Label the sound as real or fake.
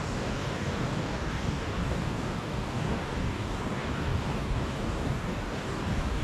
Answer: fake